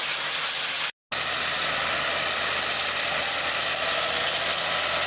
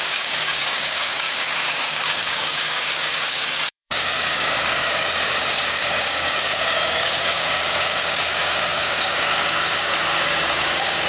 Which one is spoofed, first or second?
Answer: second